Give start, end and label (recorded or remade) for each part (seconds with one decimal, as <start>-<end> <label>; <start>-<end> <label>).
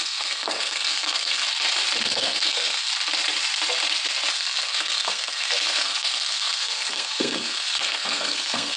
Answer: 0.0-1.4 remade; 1.4-2.0 recorded; 2.0-2.9 remade; 2.9-4.3 recorded; 4.3-8.8 remade